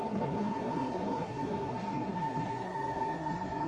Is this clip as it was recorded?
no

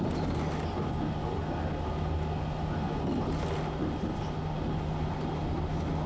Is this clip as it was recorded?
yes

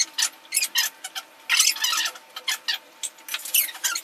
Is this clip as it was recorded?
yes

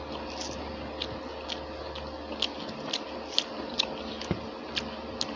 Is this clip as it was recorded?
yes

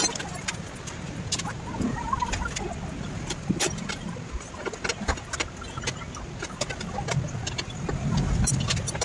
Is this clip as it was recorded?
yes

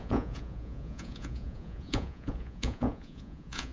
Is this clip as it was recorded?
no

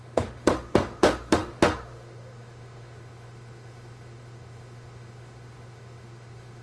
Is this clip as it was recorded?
no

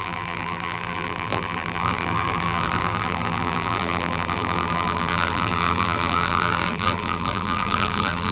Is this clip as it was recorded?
no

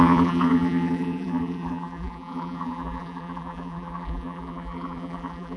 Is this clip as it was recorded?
no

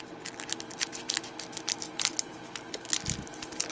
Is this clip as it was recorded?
yes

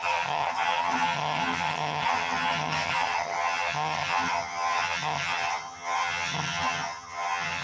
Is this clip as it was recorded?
no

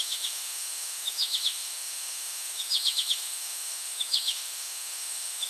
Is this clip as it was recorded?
no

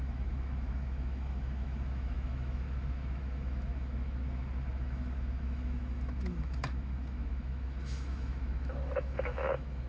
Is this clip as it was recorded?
no